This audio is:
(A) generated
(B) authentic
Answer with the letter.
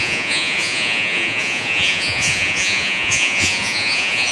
A